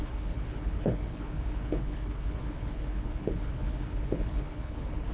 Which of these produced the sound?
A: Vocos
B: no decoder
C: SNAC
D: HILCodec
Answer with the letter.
D